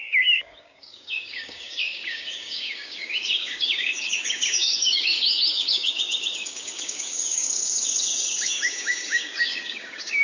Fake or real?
fake